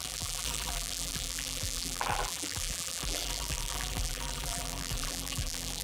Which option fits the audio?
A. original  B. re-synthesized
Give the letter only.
B